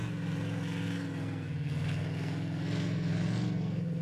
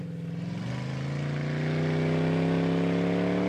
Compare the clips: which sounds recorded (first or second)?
second